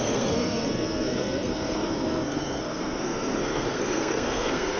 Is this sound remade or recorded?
remade